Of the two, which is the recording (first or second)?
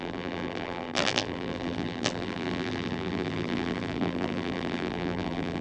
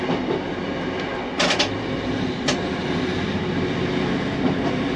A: second